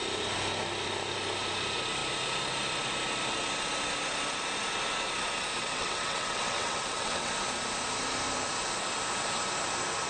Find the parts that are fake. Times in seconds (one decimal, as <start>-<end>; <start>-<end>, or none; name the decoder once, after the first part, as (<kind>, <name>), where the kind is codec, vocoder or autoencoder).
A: 5.6-7.3 (vocoder, WaveNeXt)